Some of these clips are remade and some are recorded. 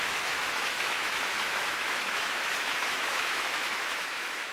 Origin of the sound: remade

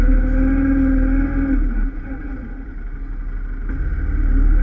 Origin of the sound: recorded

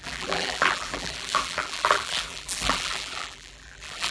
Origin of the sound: remade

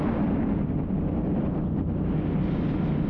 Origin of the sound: recorded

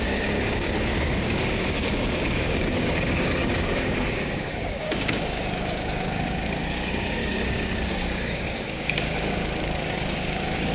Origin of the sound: remade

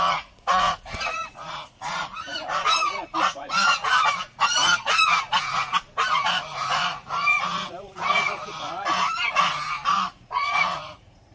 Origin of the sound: remade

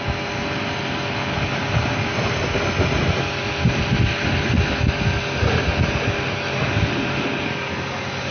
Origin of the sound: recorded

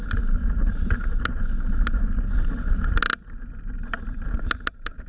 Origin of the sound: recorded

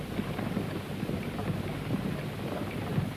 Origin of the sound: recorded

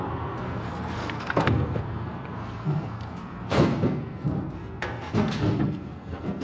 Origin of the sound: remade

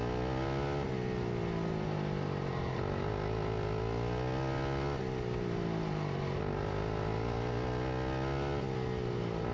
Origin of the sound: recorded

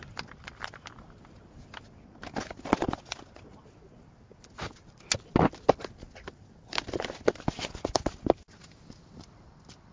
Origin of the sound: recorded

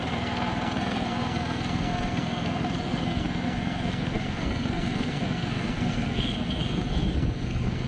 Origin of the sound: remade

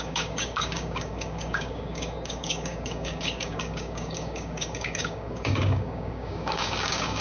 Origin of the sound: remade